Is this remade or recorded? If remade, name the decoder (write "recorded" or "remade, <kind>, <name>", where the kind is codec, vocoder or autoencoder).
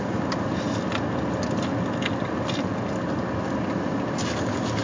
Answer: recorded